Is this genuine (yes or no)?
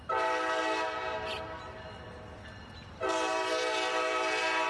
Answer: yes